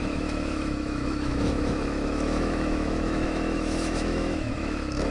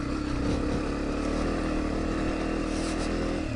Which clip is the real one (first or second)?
second